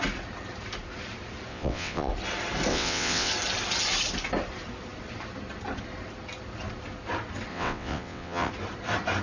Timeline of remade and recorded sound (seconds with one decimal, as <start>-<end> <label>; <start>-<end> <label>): 0.0-1.5 recorded; 1.5-2.1 remade; 2.1-2.7 recorded; 2.7-3.3 remade; 3.3-7.5 recorded; 7.5-8.5 remade; 8.5-9.2 recorded